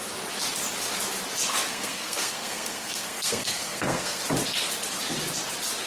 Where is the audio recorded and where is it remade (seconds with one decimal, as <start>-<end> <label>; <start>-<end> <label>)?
0.0-1.7 recorded; 1.7-4.2 remade; 4.2-5.9 recorded